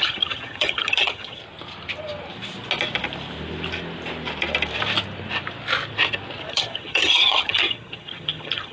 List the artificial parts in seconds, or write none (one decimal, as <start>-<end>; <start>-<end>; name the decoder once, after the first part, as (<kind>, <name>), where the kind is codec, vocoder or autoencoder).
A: 0.0-1.4 (vocoder, HiFi-GAN); 6.5-8.7